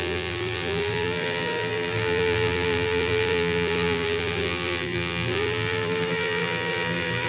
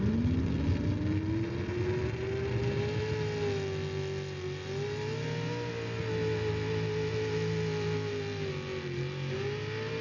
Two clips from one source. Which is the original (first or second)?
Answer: second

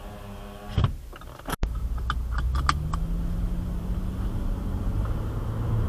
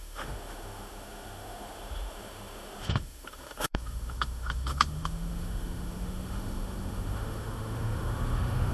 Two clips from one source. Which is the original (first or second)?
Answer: first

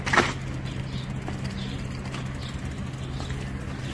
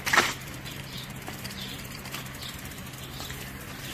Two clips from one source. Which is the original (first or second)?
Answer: first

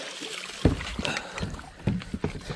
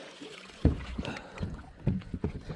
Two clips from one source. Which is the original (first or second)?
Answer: first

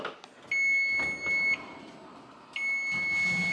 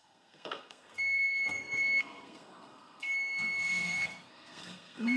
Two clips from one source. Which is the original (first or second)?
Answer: first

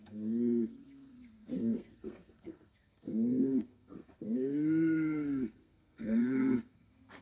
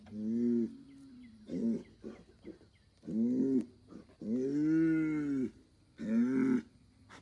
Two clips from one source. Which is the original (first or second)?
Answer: second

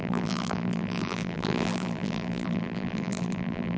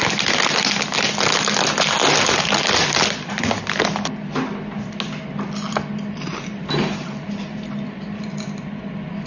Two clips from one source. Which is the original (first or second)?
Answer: second